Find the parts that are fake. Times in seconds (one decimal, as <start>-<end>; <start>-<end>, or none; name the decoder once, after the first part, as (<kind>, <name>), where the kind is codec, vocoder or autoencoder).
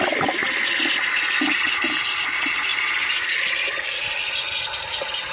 0.0-2.7 (vocoder, BigVGAN v2); 3.4-5.3